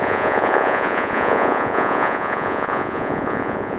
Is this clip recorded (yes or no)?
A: no